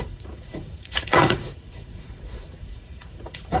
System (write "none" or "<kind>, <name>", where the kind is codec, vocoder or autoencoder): vocoder, Vocos